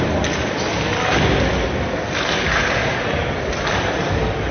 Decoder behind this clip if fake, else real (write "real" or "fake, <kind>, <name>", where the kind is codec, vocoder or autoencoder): real